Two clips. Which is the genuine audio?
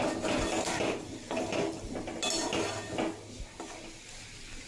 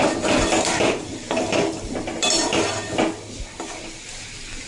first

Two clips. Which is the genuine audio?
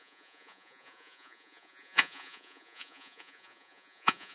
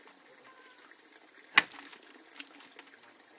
second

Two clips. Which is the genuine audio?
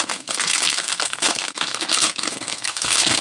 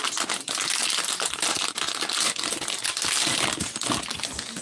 second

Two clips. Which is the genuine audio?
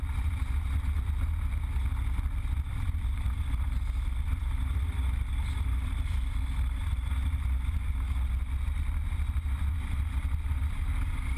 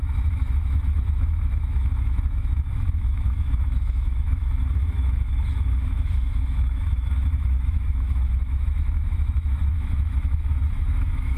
first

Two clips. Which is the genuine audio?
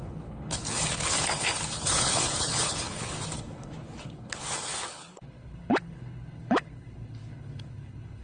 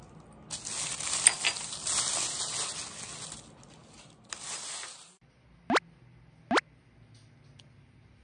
second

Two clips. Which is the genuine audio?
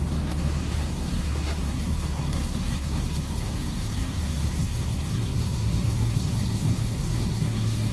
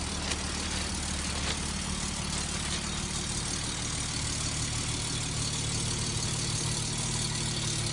second